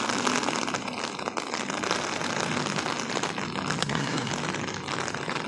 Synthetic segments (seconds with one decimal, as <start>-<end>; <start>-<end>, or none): 3.8-4.3